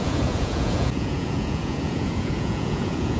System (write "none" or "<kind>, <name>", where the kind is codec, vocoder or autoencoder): vocoder, Vocos